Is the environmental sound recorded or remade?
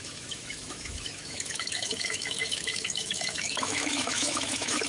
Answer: remade